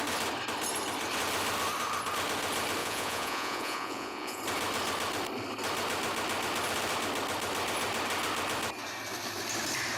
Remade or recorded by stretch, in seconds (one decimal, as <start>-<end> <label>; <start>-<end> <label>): 0.0-2.8 recorded; 2.8-4.4 remade; 4.4-10.0 recorded